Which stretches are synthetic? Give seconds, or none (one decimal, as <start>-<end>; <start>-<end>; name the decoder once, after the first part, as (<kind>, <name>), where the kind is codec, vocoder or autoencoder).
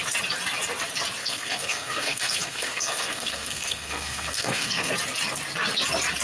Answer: 1.2-4.9 (codec, SNAC)